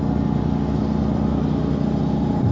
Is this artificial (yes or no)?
no